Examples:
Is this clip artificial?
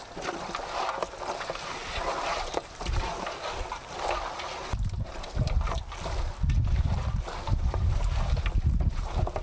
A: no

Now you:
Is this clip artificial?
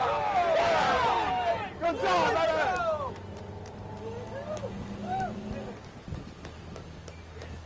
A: no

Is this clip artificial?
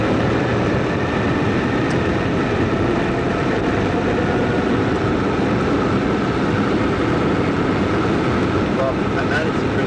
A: yes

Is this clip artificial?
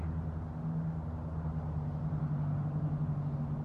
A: no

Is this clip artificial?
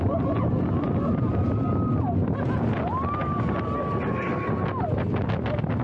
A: no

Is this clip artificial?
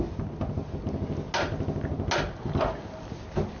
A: no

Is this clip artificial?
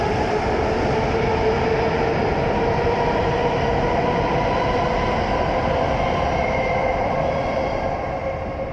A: no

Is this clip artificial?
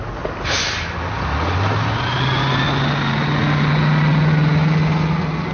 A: no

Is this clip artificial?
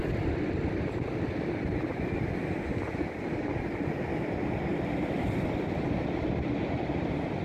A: no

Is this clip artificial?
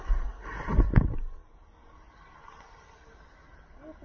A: no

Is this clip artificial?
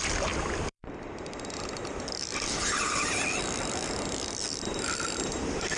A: yes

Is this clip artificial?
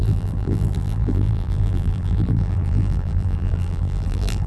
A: yes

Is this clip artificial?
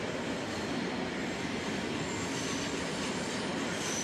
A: no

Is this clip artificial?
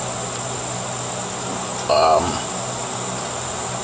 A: no